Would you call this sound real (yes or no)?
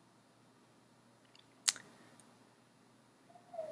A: yes